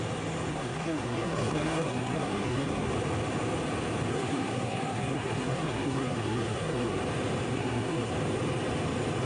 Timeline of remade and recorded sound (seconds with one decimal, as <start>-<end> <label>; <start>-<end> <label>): 0.0-0.5 recorded; 0.5-2.9 remade; 2.9-4.1 recorded; 4.1-7.0 remade; 7.0-7.5 recorded; 7.5-8.1 remade; 8.1-9.3 recorded